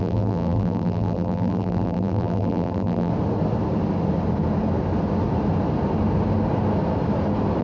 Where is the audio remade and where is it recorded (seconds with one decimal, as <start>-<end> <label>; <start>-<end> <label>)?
0.0-3.1 remade; 3.1-7.6 recorded